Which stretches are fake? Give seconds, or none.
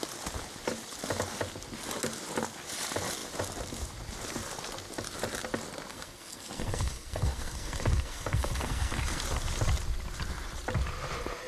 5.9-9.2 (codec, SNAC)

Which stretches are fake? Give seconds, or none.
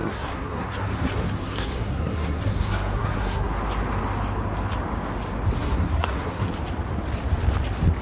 0.0-3.5 (codec, SNAC); 5.6-6.5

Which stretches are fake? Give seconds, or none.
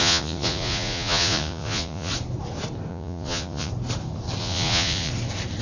0.0-2.1 (vocoder, Vocos); 2.9-3.7; 4.4-5.1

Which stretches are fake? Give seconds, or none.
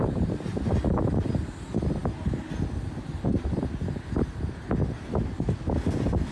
none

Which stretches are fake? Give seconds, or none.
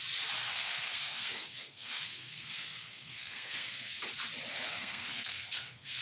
0.4-4.0 (codec, SNAC); 4.5-6.0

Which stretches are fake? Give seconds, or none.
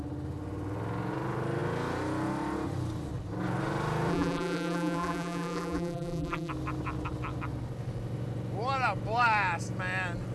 4.1-6.5 (vocoder, BigVGAN v2)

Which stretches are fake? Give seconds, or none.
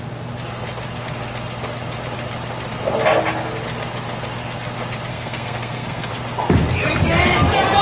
5.1-6.1 (codec, SNAC)